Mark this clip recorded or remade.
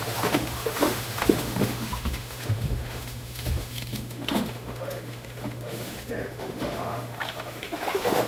remade